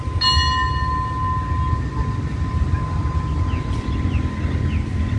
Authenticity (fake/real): real